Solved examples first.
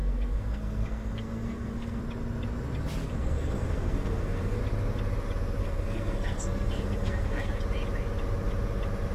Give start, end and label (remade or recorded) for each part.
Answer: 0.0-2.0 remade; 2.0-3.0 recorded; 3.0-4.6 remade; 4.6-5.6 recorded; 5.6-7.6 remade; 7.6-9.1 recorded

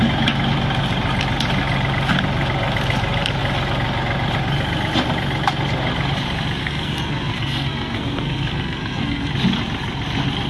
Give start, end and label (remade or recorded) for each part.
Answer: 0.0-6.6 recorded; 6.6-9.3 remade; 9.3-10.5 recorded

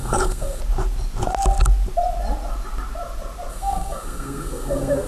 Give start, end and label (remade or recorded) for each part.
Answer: 0.0-0.6 remade; 0.6-3.5 recorded; 3.5-5.1 remade

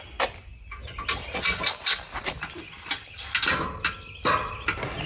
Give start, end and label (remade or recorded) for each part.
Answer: 0.0-5.1 recorded